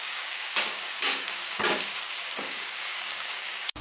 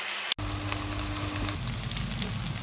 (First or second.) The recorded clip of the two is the second